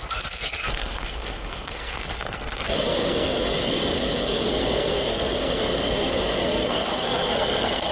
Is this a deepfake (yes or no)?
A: yes